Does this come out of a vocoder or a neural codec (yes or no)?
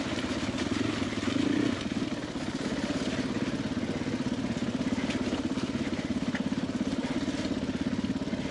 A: no